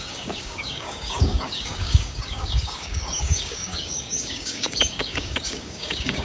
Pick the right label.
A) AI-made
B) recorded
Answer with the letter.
A